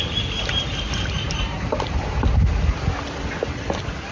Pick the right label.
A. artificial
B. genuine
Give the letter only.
B